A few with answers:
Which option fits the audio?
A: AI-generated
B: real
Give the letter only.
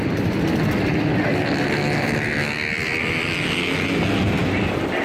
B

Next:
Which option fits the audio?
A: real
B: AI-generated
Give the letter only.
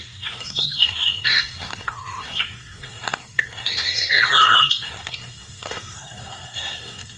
B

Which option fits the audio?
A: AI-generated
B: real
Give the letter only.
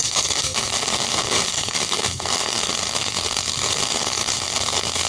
A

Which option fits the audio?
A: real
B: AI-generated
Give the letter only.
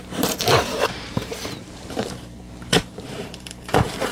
B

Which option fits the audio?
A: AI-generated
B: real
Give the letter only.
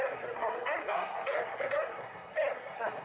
A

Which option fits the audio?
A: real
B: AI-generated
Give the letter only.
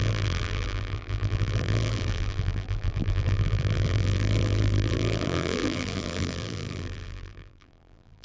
B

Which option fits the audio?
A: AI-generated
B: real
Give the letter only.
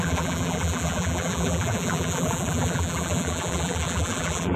A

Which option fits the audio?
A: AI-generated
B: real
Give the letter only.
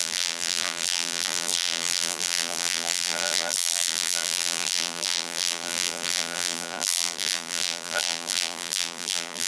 A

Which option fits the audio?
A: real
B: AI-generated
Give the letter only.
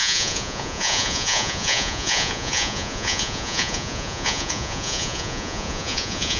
B